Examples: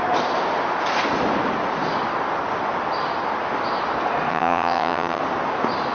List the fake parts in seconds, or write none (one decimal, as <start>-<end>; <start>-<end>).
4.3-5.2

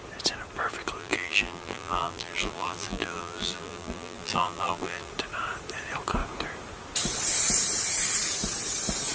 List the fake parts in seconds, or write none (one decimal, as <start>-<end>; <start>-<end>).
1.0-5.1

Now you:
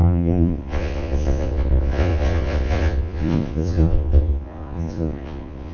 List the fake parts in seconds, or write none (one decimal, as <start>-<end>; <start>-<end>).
0.0-5.7

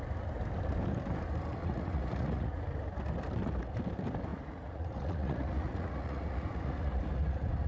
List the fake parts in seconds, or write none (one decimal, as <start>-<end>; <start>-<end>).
1.6-2.6; 4.3-7.7